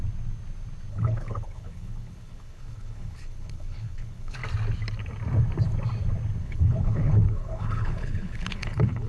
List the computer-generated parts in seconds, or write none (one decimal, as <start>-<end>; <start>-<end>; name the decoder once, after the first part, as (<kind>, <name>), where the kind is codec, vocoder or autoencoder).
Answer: 0.9-4.4 (codec, HILCodec); 6.4-9.1